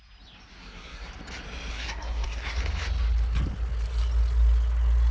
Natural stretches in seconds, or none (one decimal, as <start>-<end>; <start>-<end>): 0.0-0.6; 1.1-1.7; 2.6-5.1